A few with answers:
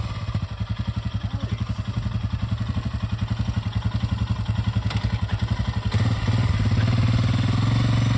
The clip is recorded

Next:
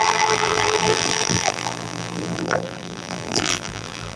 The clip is remade